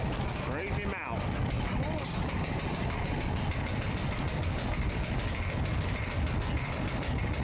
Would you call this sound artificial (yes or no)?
no